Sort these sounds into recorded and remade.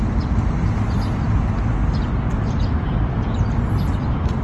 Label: recorded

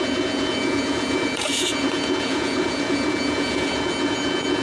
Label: remade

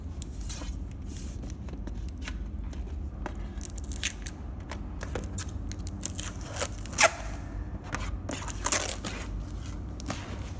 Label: recorded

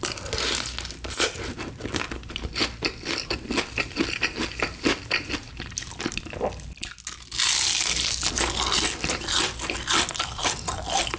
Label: recorded